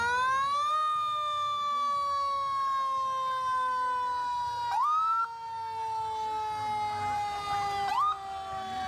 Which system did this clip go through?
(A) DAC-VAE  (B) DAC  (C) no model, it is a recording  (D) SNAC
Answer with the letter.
C